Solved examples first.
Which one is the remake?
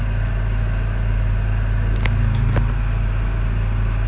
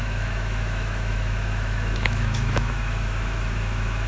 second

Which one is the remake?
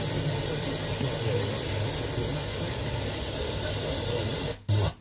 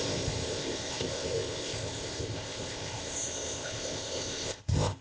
second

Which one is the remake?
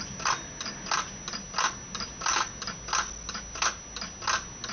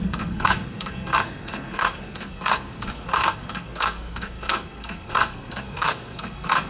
second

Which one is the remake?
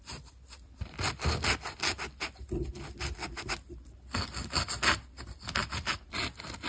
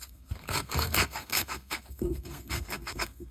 second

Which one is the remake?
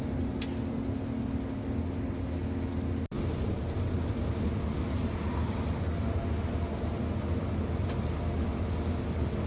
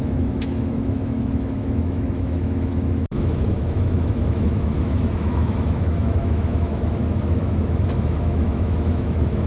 second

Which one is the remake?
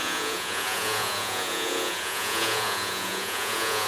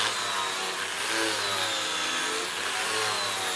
first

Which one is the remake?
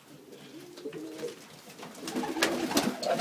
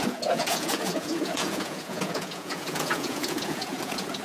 second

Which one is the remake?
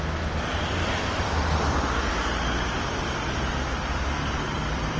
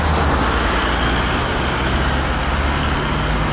first